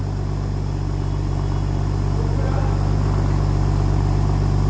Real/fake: real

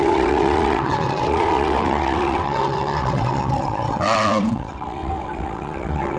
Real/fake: fake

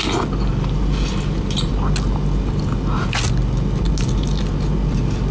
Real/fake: real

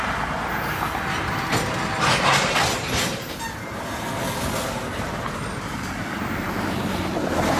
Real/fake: real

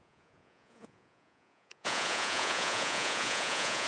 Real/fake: fake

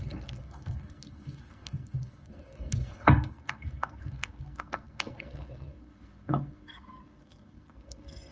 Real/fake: fake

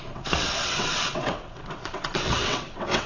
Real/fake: fake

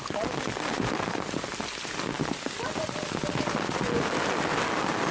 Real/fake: real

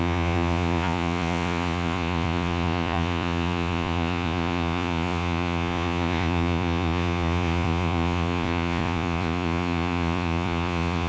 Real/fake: fake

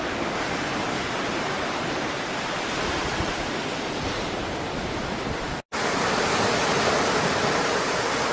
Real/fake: real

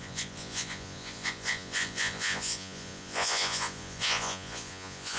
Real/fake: fake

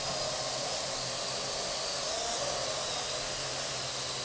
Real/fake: real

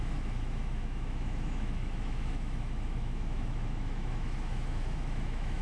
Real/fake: fake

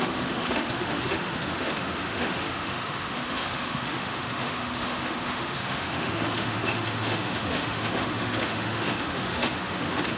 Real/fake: fake